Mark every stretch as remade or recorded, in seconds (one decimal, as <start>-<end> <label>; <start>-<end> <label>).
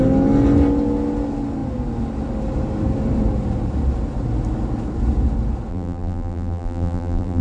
0.0-5.7 recorded; 5.7-7.4 remade